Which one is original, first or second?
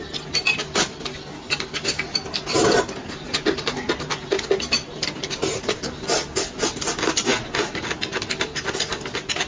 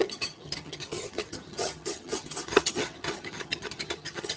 first